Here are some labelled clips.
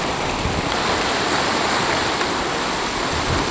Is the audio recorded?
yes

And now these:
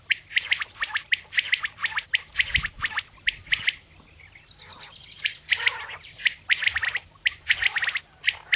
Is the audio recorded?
yes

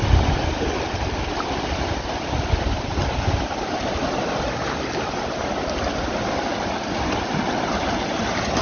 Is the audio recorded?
yes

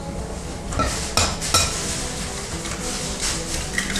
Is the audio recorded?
yes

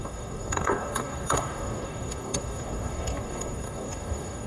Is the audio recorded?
no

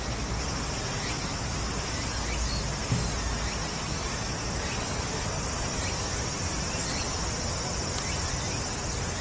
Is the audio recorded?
yes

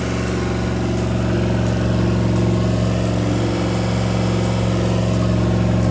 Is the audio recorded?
yes